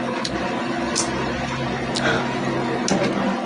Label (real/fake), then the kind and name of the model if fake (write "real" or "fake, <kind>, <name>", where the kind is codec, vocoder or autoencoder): real